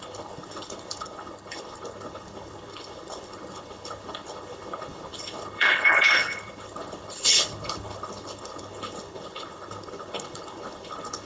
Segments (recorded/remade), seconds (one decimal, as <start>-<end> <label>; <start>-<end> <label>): 0.0-11.3 remade